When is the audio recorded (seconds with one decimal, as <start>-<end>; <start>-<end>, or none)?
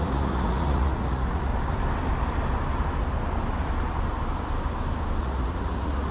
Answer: 1.5-5.2